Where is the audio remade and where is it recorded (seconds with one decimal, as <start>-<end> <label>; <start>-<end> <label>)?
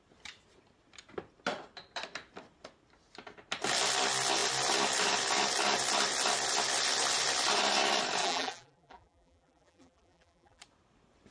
0.0-8.2 recorded; 8.2-10.6 remade; 10.6-11.3 recorded